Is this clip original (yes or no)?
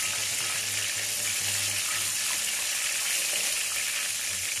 yes